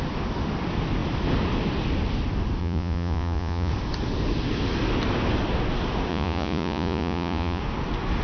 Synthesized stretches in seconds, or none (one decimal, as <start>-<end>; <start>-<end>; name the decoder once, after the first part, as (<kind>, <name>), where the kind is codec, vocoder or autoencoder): 2.6-3.7 (vocoder, Vocos); 6.1-7.6